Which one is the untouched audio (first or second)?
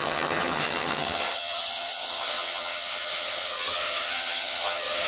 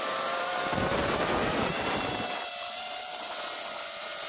second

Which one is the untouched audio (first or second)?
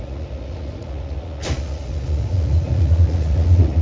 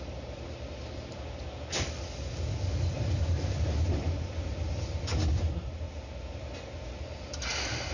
second